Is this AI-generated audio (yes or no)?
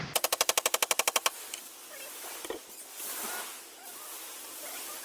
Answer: no